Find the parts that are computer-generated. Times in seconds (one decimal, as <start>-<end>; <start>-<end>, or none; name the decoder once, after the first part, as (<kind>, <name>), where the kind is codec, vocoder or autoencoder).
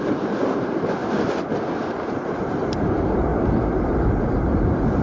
none